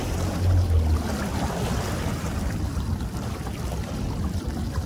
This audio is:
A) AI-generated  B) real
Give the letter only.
A